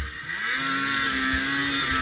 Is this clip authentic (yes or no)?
yes